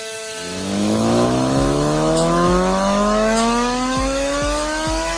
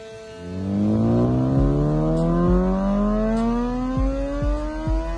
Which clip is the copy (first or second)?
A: first